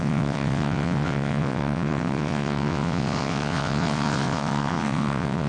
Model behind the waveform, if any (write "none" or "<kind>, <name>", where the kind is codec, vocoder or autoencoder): vocoder, WaveNeXt